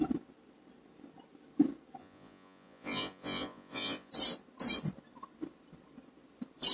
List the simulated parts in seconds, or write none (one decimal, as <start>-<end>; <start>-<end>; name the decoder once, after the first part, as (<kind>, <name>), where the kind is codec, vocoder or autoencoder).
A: 2.0-4.1 (vocoder, Vocos)